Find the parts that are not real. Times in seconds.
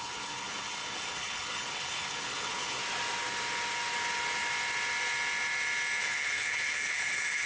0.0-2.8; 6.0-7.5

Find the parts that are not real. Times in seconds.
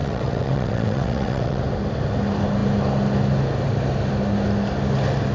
0.0-1.6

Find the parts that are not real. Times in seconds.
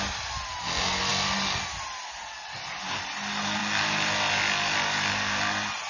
none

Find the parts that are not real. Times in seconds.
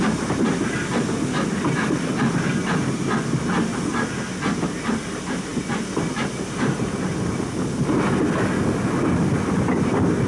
none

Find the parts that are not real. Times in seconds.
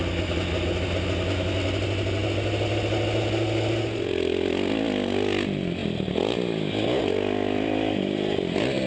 none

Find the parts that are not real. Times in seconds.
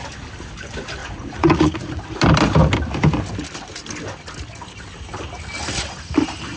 1.0-2.0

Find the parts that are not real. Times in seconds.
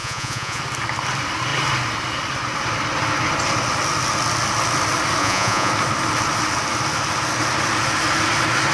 0.0-0.6; 5.2-5.7